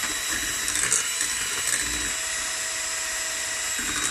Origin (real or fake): real